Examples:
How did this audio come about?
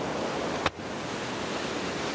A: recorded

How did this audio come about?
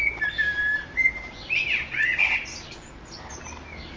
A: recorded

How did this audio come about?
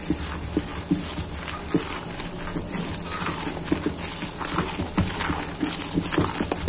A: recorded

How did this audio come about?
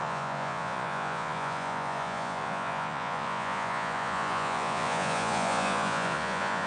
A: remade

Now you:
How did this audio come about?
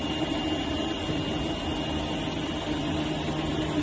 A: recorded